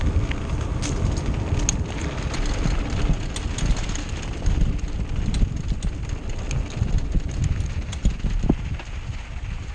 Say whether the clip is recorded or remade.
recorded